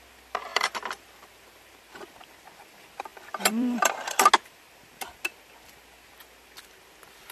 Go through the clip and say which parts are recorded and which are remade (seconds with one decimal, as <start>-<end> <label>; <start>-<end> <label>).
0.0-0.5 recorded; 0.5-1.7 remade; 1.7-3.1 recorded; 3.1-4.3 remade; 4.3-7.3 recorded